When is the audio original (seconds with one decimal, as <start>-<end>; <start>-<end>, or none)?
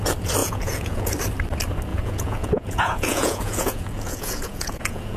0.0-0.4; 1.1-1.9